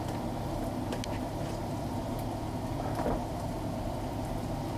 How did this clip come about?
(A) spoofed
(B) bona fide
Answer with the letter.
B